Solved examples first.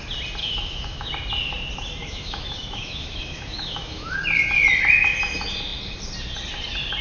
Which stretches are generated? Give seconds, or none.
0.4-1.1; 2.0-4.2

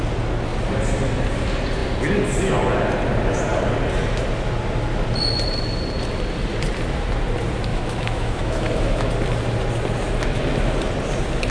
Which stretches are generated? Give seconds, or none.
7.7-9.1